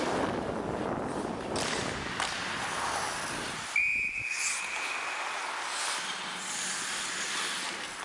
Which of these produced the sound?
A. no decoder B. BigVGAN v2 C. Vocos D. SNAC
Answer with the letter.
A